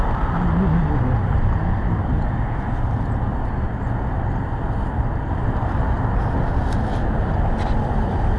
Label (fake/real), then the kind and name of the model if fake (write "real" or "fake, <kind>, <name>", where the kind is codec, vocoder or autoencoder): real